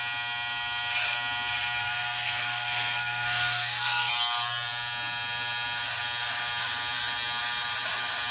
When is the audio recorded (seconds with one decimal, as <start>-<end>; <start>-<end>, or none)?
0.0-1.8; 4.1-8.3